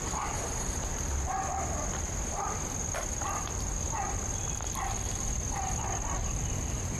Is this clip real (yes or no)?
no